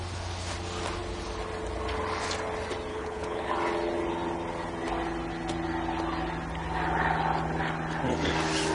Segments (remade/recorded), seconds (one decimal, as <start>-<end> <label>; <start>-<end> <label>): 0.0-2.9 recorded; 2.9-3.5 remade; 3.5-8.7 recorded